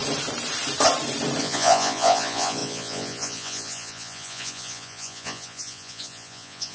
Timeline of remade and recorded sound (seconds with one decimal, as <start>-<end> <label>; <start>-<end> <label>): 0.0-1.4 recorded; 1.4-6.7 remade